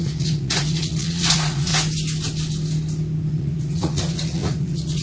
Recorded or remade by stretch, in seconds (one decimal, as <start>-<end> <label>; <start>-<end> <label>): 0.0-1.7 remade; 1.7-3.3 recorded; 3.3-5.0 remade